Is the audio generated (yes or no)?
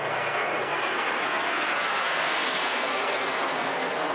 yes